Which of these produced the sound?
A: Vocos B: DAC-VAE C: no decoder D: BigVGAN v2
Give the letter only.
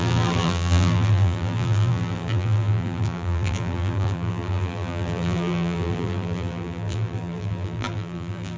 D